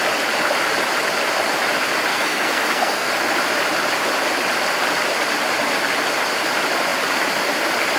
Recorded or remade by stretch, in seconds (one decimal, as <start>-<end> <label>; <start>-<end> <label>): 0.0-2.1 recorded; 2.1-3.1 remade; 3.1-8.0 recorded